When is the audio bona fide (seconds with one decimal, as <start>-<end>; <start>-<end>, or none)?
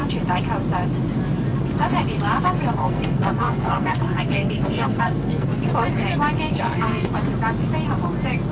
0.0-2.8; 5.7-6.5; 7.1-8.5